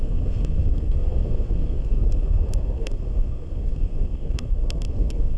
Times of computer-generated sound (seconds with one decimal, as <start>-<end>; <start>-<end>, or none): 0.0-5.4